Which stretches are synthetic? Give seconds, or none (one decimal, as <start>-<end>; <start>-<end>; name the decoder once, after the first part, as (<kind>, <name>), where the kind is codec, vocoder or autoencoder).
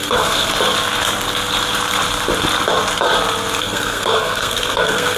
0.0-0.5 (codec, SNAC); 3.6-5.2